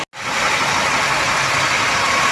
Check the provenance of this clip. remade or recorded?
recorded